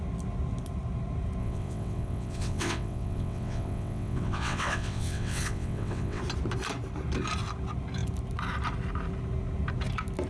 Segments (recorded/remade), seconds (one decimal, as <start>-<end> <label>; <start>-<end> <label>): 0.0-1.4 recorded; 1.4-6.2 remade; 6.2-10.3 recorded